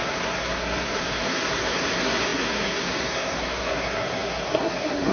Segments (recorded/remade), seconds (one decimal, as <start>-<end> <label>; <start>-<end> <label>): 0.0-5.1 remade